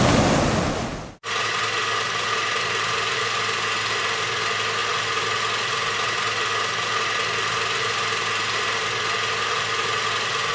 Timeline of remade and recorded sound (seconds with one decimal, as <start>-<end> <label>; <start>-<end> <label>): 0.0-10.5 recorded